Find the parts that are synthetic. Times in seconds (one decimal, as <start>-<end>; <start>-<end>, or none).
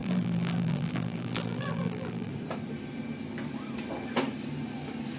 0.0-2.3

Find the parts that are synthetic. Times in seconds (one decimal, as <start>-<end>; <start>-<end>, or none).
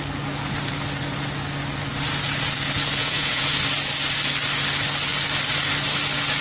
3.0-3.6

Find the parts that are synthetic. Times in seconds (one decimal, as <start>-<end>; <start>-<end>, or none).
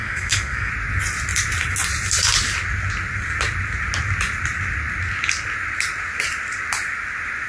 0.0-0.7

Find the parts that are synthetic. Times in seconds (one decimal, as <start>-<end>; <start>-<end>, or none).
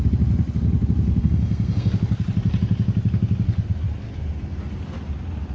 1.2-1.9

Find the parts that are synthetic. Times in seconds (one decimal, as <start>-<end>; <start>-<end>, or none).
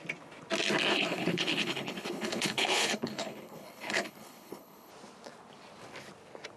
0.9-4.9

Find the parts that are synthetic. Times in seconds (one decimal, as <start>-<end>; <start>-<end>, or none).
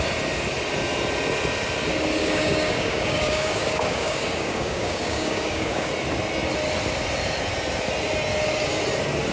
2.2-5.9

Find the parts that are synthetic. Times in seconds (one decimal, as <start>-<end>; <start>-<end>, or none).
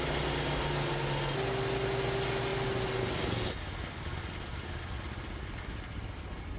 none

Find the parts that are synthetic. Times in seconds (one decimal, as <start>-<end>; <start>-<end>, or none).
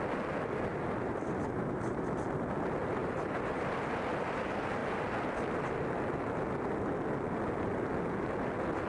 0.7-2.1; 3.0-3.6